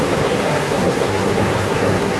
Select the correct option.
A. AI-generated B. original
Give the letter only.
A